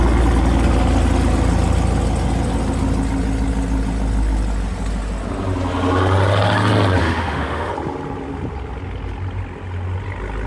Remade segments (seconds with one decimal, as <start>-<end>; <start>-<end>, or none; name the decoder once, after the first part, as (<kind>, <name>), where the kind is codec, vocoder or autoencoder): 7.0-7.7 (autoencoder, DAC-VAE)